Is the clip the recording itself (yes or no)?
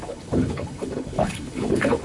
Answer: no